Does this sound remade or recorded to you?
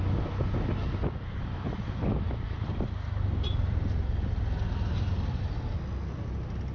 recorded